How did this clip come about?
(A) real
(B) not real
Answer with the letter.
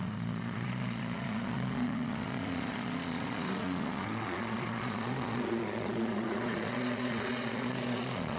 B